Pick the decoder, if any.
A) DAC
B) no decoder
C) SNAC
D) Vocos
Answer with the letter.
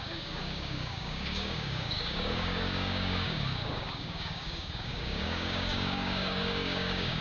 A